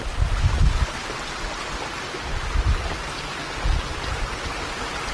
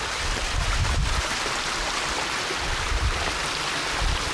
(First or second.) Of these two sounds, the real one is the first